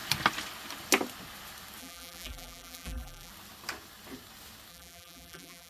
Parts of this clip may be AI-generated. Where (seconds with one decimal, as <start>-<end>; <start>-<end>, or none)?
1.8-3.3; 4.7-5.7